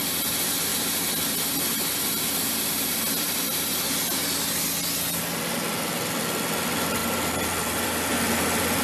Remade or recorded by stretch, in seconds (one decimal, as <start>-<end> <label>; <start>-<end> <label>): 0.0-7.0 recorded; 7.0-8.1 remade; 8.1-8.8 recorded